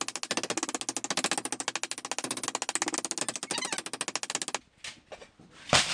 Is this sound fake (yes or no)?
no